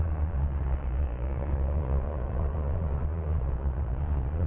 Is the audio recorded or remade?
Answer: remade